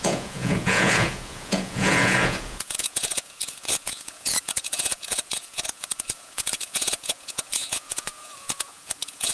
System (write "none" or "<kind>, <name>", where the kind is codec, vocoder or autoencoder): vocoder, Vocos